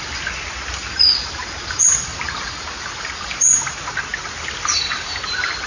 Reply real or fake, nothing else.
real